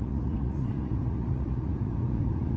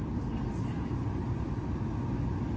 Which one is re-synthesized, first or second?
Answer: first